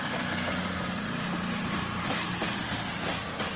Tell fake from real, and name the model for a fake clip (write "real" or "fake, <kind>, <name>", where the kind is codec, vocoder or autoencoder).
real